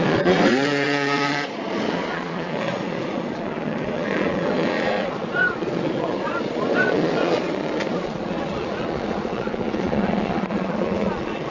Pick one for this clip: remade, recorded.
remade